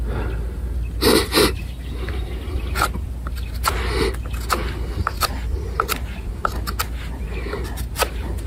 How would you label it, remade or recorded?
recorded